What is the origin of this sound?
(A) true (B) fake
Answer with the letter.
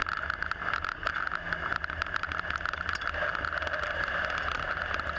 A